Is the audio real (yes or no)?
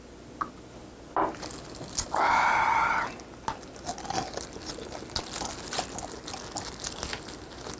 yes